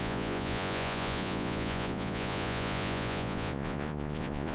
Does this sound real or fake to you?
fake